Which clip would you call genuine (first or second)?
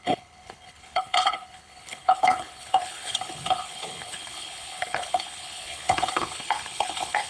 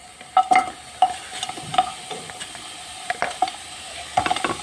second